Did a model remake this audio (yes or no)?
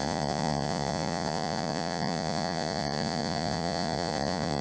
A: yes